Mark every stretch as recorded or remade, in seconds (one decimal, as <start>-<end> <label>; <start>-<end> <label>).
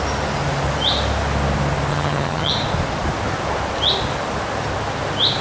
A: 0.0-1.9 recorded; 1.9-2.5 remade; 2.5-5.4 recorded